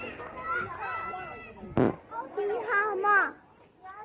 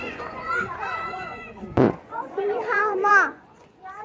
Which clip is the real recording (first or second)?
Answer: first